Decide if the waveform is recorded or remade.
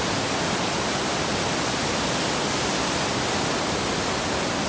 recorded